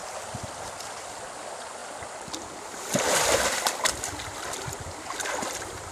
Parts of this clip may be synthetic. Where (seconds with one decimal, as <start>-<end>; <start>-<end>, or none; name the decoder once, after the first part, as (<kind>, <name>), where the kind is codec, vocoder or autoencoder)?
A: 0.0-1.8 (vocoder, BigVGAN v2); 4.5-5.9